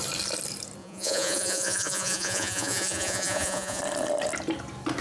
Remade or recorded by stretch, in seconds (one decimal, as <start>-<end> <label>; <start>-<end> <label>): 0.0-0.8 recorded; 0.8-3.8 remade; 3.8-5.0 recorded